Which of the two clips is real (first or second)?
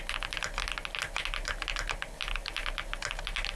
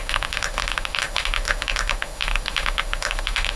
first